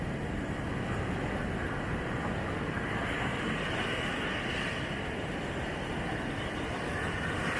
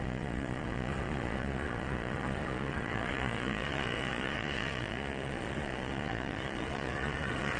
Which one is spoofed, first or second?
second